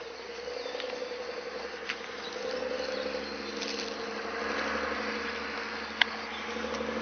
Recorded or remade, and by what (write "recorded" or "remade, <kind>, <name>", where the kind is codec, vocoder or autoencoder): recorded